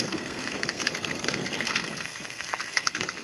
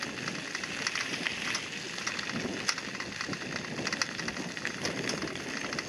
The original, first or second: second